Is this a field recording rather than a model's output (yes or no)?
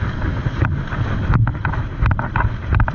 yes